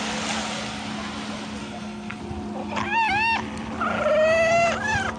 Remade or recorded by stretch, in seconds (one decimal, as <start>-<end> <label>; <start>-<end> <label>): 0.0-1.6 recorded; 1.6-2.2 remade; 2.2-5.2 recorded

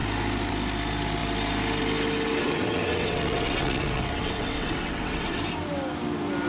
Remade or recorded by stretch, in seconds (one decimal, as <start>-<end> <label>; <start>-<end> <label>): 0.0-2.4 recorded; 2.4-5.4 remade; 5.4-6.5 recorded

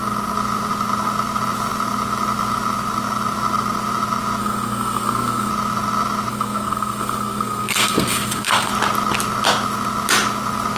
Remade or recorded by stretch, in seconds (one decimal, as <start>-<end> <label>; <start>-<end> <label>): 0.0-4.4 recorded; 4.4-5.5 remade; 5.5-6.3 recorded; 6.3-8.7 remade; 8.7-10.8 recorded

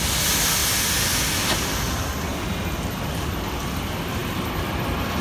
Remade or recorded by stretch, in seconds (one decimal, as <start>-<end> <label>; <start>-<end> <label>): 0.0-0.6 remade; 0.6-1.2 recorded; 1.2-2.3 remade; 2.3-3.1 recorded; 3.1-4.2 remade; 4.2-4.7 recorded; 4.7-5.2 remade

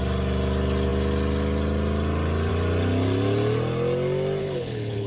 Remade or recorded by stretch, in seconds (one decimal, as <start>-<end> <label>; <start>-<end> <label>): 0.0-4.4 recorded; 4.4-5.1 remade

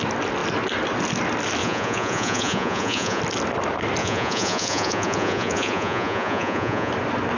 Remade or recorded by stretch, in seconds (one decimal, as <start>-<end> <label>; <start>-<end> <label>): 0.0-1.6 recorded; 1.6-3.2 remade; 3.2-4.0 recorded; 4.0-6.9 remade; 6.9-7.4 recorded

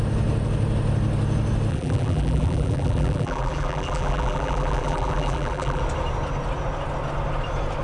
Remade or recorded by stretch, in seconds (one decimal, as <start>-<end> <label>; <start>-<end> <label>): 0.0-1.7 recorded; 1.7-5.8 remade; 5.8-7.8 recorded

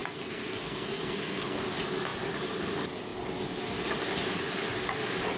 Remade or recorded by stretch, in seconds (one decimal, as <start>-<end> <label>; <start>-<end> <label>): 0.0-1.6 remade; 1.6-5.4 recorded